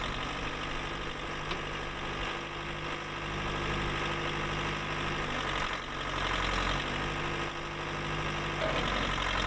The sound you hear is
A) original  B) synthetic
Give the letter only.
A